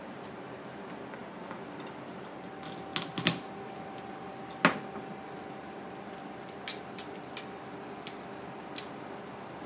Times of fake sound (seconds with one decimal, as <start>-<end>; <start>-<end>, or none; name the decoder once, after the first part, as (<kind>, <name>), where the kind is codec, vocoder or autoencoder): none